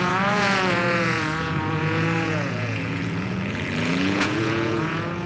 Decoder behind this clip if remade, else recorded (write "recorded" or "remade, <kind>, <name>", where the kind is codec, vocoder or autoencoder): remade, vocoder, Vocos